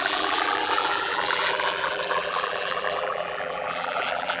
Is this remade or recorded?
remade